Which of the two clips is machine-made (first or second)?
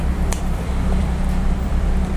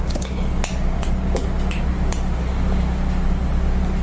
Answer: first